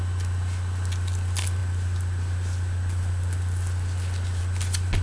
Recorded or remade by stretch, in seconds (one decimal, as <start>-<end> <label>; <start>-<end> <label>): 0.0-5.0 recorded